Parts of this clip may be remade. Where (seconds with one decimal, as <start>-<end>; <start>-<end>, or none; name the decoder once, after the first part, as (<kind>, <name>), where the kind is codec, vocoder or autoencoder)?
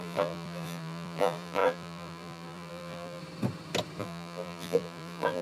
0.0-3.2 (vocoder, BigVGAN v2); 4.0-5.4